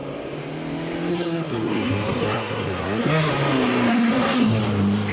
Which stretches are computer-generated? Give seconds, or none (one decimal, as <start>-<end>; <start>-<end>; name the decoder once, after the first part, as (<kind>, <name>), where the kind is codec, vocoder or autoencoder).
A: 1.1-3.3 (codec, SNAC); 3.9-4.6